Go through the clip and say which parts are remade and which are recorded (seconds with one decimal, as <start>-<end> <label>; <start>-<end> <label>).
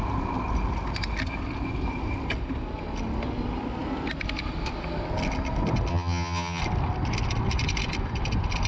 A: 0.0-5.9 recorded; 5.9-6.6 remade; 6.6-8.7 recorded